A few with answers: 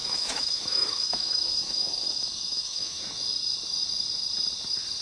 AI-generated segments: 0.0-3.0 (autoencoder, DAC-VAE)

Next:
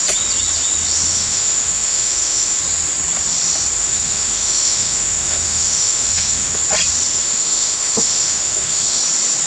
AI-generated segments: 1.1-2.6 (autoencoder, DAC-VAE); 3.8-6.6; 7.1-9.0

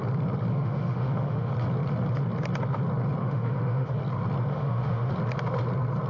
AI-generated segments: 0.5-1.5 (autoencoder, DAC-VAE); 3.2-4.0; 4.5-5.1

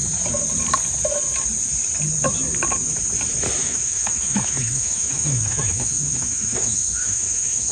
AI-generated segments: 3.6-7.7 (autoencoder, DAC-VAE)

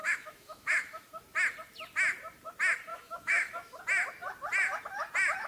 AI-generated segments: 0.0-1.1 (autoencoder, DAC-VAE); 2.9-3.8

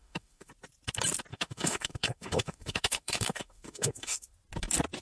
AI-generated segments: 0.0-0.5 (autoencoder, DAC-VAE); 1.3-4.3